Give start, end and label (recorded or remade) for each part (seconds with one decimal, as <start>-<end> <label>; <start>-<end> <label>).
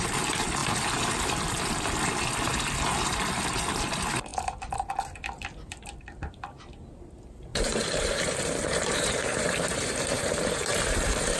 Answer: 0.0-4.3 recorded; 4.3-4.9 remade; 4.9-7.5 recorded; 7.5-11.4 remade